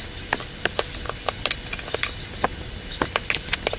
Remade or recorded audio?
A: recorded